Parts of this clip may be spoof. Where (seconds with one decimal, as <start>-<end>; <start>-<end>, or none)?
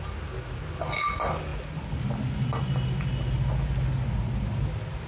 none